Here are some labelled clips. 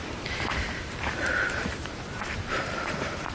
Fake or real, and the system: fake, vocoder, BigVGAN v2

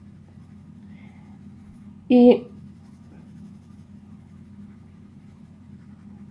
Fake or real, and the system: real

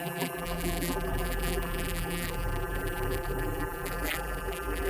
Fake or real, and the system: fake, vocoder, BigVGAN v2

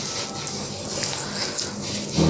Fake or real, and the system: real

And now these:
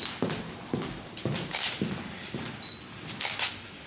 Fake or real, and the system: real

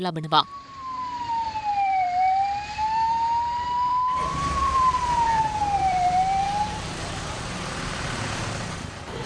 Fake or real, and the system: fake, vocoder, BigVGAN v2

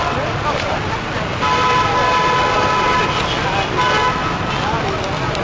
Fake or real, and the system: real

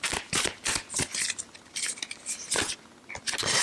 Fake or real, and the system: real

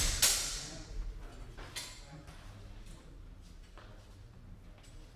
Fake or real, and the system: real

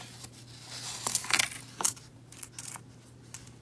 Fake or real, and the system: real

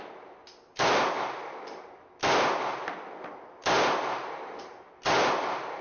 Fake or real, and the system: real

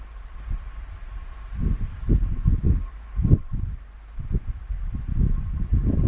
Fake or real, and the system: fake, vocoder, BigVGAN v2